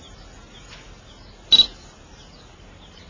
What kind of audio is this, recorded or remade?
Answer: recorded